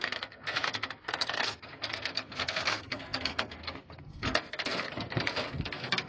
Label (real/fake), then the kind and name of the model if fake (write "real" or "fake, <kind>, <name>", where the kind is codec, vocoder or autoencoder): fake, codec, SNAC